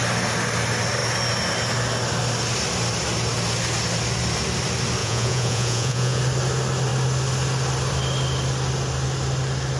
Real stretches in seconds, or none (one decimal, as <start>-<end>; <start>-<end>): 0.0-5.0; 6.2-9.8